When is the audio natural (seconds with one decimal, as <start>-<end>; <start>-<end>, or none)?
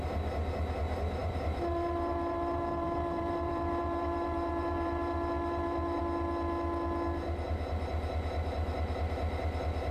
0.0-1.2; 6.0-9.9